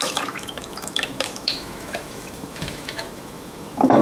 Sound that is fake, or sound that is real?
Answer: fake